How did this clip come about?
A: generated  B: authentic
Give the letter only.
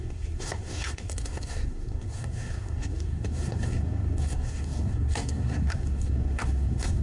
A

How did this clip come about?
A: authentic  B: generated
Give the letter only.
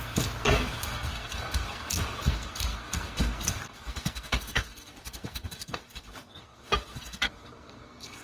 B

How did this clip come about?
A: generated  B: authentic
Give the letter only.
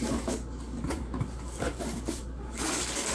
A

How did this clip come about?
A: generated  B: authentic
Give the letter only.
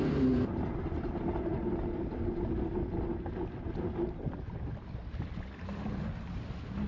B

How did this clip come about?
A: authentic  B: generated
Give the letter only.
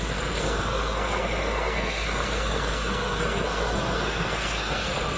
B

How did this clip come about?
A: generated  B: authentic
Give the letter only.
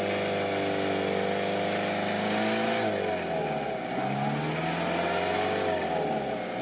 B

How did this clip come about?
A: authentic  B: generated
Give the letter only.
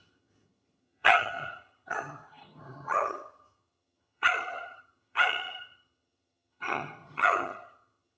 B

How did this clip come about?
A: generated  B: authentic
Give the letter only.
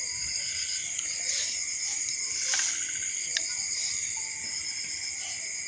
B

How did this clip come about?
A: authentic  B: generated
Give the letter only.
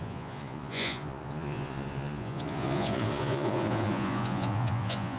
B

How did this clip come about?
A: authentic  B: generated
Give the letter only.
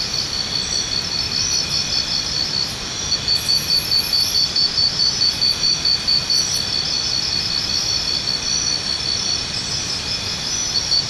A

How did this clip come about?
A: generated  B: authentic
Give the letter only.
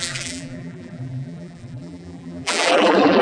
A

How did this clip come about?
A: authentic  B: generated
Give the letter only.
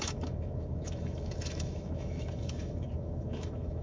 B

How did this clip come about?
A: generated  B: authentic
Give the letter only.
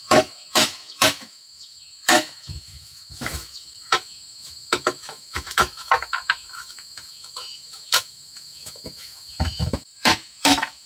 A